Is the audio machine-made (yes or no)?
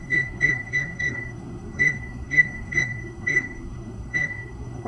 yes